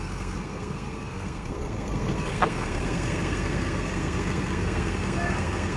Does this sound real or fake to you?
fake